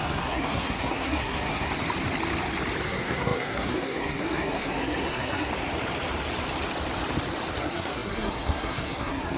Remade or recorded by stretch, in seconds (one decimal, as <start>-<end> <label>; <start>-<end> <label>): 0.0-1.7 remade; 1.7-2.8 recorded; 2.8-5.5 remade; 5.5-7.6 recorded; 7.6-9.4 remade